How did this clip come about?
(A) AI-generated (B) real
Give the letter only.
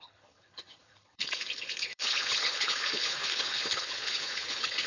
A